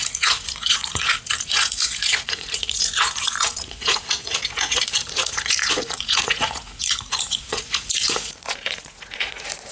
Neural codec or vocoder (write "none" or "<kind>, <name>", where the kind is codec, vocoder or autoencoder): vocoder, Vocos